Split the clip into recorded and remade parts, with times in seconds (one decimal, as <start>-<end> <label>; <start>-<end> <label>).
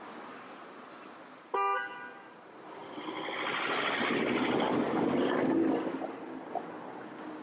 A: 0.0-7.4 recorded